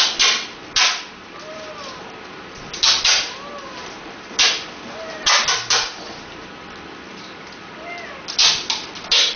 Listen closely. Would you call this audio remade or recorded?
remade